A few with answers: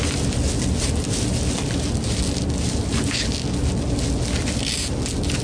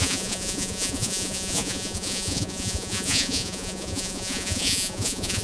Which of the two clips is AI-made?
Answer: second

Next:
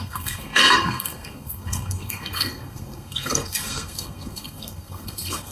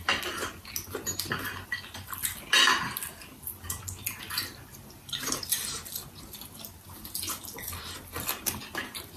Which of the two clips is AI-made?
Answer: first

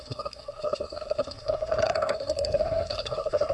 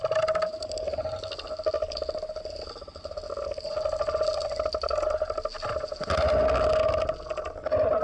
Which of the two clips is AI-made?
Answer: first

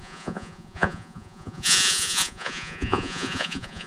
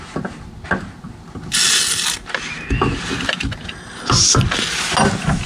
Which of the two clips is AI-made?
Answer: first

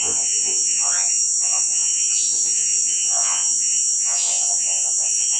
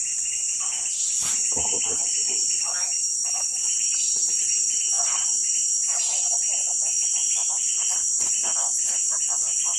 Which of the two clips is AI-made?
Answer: first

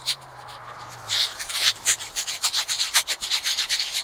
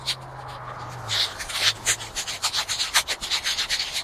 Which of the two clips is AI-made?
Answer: first